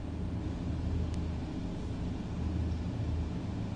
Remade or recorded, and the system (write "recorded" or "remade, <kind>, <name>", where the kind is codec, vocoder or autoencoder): recorded